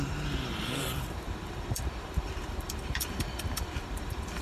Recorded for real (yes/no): no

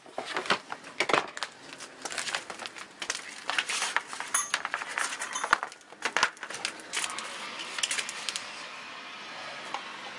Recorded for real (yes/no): yes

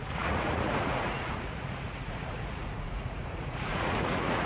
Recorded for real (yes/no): no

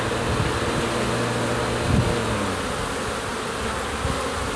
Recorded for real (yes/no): yes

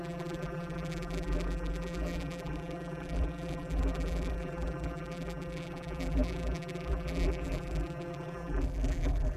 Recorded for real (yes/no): no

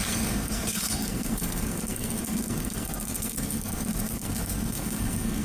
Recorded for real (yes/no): no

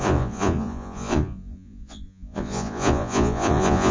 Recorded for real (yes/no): no